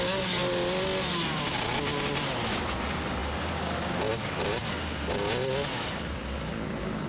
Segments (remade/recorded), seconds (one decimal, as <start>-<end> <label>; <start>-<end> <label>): 0.0-7.1 recorded